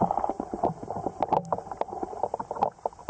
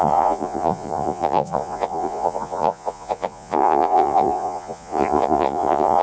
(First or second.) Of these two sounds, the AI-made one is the second